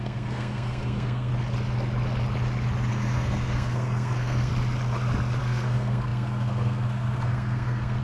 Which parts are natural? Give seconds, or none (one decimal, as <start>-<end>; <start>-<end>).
1.3-2.9; 4.5-5.4